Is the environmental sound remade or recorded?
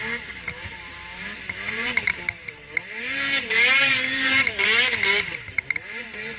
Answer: remade